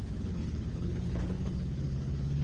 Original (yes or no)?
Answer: no